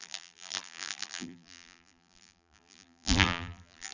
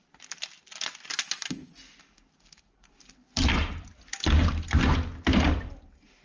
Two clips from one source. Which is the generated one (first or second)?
first